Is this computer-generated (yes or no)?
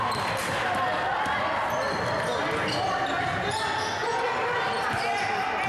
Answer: no